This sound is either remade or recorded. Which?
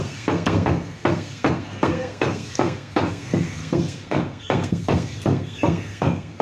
remade